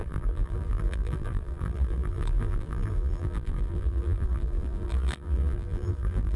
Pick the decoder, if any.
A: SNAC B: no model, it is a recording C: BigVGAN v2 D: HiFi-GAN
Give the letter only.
C